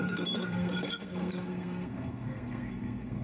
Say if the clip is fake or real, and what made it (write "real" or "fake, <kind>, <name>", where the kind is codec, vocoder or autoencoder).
fake, codec, SNAC